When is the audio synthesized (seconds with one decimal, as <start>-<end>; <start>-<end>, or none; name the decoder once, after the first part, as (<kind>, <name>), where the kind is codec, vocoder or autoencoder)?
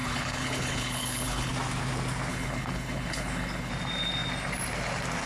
0.0-1.5 (codec, HILCodec); 2.3-3.7